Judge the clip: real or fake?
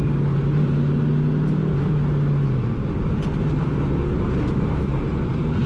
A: real